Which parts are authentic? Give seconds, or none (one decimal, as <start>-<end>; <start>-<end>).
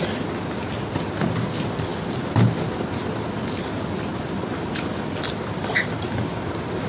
0.0-6.9